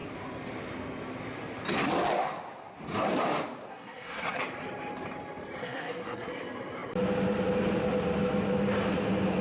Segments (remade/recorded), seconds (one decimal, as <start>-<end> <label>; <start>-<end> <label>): 0.0-3.7 recorded; 3.7-4.4 remade; 4.4-5.6 recorded; 5.6-6.3 remade; 6.3-9.4 recorded